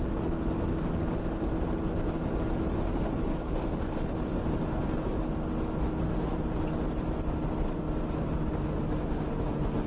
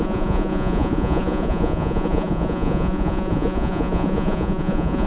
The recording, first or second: first